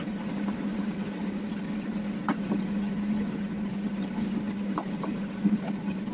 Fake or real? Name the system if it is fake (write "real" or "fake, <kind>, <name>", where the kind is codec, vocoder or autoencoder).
real